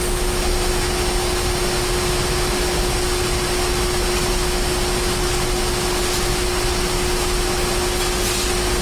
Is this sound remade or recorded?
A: recorded